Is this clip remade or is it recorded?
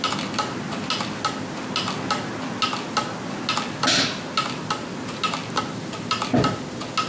recorded